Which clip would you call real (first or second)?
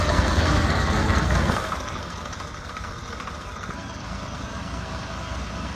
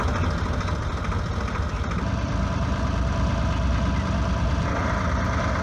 second